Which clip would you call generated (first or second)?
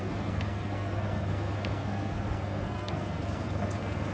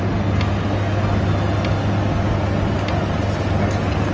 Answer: first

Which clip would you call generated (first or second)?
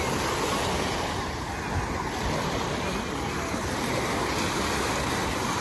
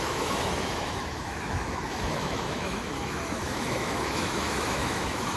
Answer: second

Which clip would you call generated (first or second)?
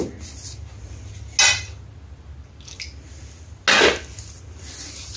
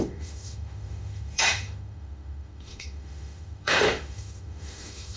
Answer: second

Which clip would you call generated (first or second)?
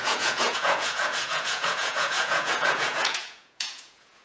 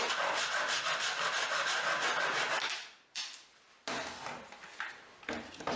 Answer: first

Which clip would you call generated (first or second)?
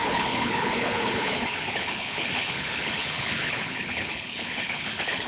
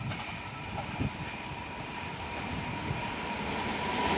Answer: first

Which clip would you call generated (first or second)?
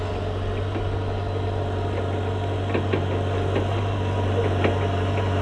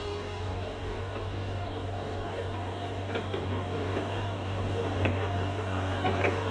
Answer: second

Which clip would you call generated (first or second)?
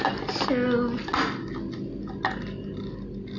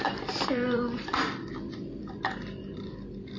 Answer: second